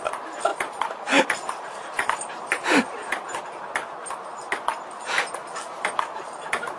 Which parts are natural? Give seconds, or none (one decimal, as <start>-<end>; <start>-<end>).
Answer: 0.0-0.5; 3.4-6.8